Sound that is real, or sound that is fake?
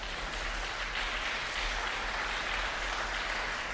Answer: real